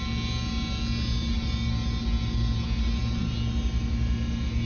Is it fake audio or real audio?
real